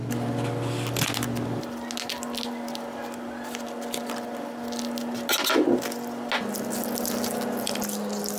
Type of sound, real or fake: real